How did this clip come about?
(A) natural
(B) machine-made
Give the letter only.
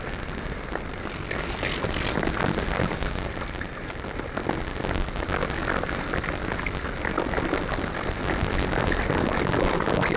A